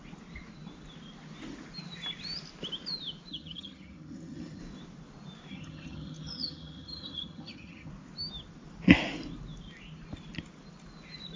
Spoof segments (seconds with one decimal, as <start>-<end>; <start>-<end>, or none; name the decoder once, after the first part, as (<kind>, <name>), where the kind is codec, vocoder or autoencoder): 3.3-4.6 (vocoder, HiFi-GAN); 5.5-7.9